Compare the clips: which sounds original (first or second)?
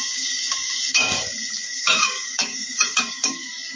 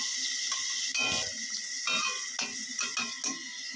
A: second